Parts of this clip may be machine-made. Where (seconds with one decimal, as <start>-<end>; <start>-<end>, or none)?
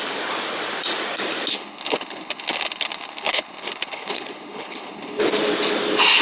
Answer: 1.5-5.2